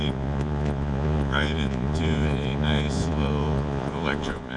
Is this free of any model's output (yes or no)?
no